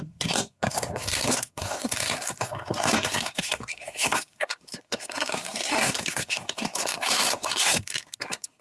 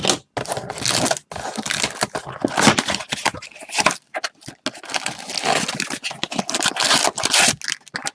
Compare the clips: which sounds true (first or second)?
second